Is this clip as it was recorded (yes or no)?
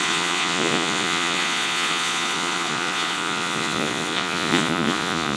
no